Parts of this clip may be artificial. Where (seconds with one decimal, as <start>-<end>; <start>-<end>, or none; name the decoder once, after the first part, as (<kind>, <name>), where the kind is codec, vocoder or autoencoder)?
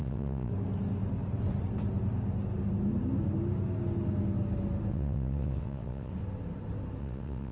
0.0-0.5 (vocoder, WaveNeXt); 4.9-6.1; 7.0-7.5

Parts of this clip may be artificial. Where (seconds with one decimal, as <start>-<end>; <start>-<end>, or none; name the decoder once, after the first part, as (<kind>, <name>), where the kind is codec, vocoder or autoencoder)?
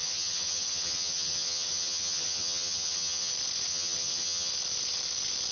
0.0-3.3 (vocoder, HiFi-GAN); 3.7-4.5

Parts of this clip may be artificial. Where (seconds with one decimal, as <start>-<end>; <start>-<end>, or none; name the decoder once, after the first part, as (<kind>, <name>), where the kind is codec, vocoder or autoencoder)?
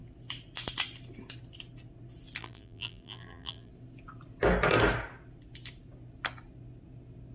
2.4-3.7 (vocoder, BigVGAN v2)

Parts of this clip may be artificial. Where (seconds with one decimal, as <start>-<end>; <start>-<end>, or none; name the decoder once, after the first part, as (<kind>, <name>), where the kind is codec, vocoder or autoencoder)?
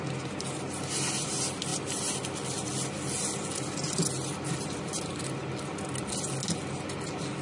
none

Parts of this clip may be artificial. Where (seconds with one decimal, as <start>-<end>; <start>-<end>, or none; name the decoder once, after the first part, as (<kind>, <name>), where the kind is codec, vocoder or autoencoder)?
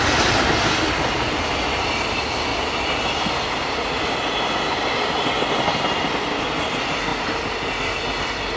none